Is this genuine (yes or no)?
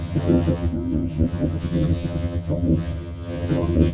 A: no